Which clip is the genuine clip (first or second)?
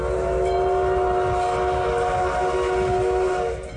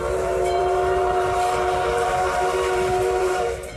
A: first